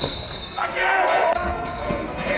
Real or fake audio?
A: fake